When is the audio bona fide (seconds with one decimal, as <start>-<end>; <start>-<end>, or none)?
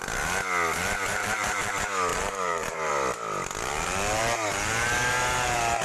0.0-1.1; 1.7-2.1; 2.9-5.8